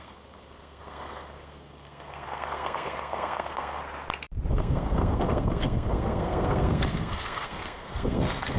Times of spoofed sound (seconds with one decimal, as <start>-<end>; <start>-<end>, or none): 0.0-3.8; 4.5-8.6